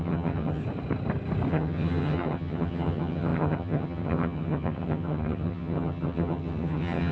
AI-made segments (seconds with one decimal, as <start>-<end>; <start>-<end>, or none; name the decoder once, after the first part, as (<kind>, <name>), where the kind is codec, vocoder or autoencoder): 0.0-0.6 (vocoder, HiFi-GAN); 1.5-7.1